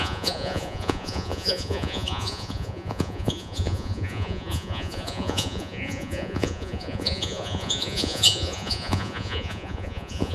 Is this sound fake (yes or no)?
yes